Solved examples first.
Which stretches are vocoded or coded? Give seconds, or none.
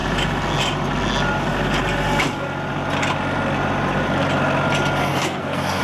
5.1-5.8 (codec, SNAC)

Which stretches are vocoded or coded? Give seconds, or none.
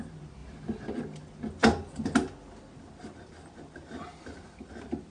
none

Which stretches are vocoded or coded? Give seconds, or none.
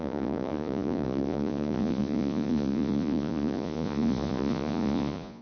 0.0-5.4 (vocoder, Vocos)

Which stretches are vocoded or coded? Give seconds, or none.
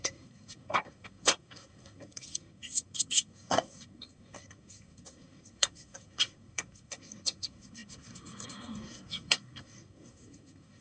0.0-10.8 (codec, SNAC)